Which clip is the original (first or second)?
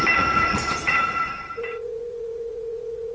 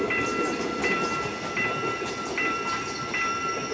second